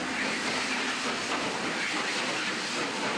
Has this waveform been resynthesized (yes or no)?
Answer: no